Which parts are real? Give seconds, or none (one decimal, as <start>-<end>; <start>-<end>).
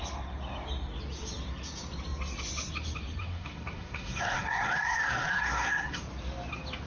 0.0-3.2; 6.0-6.9